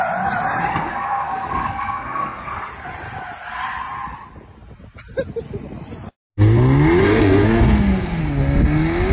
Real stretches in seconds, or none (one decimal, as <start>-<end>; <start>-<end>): 0.0-0.7; 2.7-7.0; 8.2-9.1